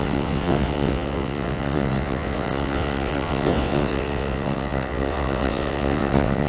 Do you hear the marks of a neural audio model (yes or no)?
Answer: yes